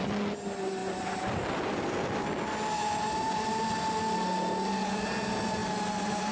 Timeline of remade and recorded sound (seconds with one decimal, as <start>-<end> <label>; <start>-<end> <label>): 0.0-6.3 recorded